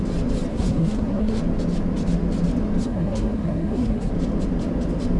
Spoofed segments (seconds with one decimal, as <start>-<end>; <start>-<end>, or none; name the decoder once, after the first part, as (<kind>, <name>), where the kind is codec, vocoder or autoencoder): 0.5-1.4 (codec, SNAC); 2.8-4.1